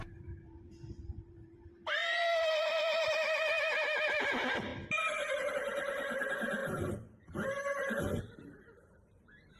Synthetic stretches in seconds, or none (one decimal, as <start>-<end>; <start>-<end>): 0.0-4.7; 5.5-6.6; 8.2-9.6